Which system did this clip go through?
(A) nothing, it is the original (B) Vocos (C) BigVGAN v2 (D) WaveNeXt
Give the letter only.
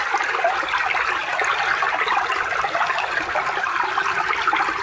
A